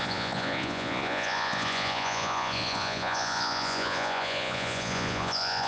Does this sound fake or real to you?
fake